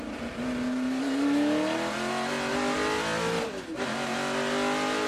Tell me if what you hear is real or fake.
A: real